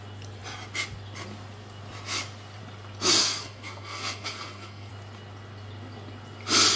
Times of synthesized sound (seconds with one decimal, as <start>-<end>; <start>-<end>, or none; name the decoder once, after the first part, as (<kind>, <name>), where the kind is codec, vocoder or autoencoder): 3.2-4.9 (codec, SNAC)